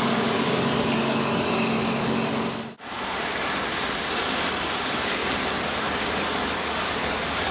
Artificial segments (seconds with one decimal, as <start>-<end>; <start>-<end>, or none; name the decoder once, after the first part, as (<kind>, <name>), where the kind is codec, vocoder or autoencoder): 0.0-2.3 (codec, DAC); 4.8-5.2; 5.9-7.5